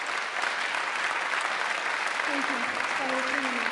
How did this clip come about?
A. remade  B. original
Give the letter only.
B